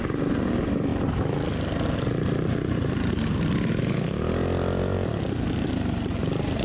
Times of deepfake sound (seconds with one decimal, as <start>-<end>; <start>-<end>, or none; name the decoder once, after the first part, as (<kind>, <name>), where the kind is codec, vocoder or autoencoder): none

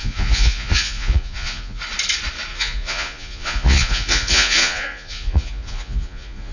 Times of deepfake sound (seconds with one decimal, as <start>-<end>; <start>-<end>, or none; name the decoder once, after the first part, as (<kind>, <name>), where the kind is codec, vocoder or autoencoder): 0.0-1.8 (vocoder, Vocos); 2.5-6.5

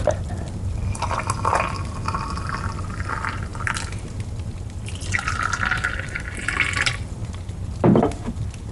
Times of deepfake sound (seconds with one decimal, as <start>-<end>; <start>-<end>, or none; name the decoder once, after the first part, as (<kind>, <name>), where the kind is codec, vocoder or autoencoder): none

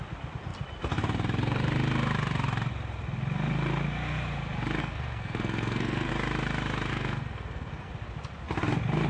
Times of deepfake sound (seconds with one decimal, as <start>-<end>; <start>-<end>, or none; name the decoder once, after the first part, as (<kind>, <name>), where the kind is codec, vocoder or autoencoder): 4.8-6.1 (codec, SNAC); 6.9-7.9

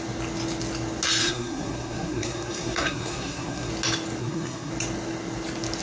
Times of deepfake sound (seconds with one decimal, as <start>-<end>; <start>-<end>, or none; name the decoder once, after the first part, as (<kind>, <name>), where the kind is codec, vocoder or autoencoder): 1.2-3.7 (codec, SNAC); 4.2-4.7

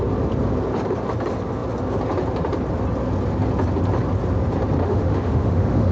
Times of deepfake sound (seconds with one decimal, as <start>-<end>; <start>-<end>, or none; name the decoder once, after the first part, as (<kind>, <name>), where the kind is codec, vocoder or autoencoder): 4.8-5.9 (autoencoder, DAC-VAE)

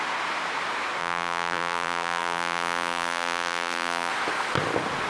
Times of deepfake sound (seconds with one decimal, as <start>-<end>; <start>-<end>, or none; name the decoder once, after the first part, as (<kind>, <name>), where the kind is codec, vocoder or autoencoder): 1.0-4.1 (vocoder, BigVGAN v2)

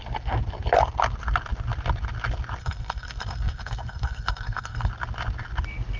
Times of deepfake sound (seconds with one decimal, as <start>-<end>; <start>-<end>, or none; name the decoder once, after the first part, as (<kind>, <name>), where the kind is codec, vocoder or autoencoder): 2.6-4.9 (codec, SNAC)